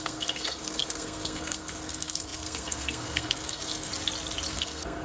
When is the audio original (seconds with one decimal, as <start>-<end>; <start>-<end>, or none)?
3.9-4.5